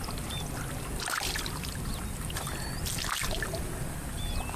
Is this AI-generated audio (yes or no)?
no